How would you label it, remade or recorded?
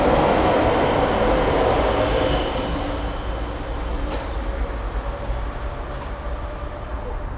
recorded